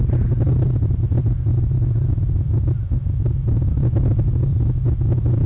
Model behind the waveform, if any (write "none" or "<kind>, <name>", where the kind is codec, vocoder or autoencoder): none